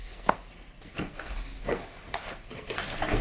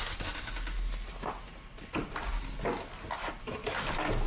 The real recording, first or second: second